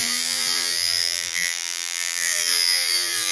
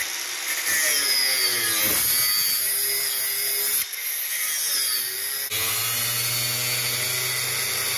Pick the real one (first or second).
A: second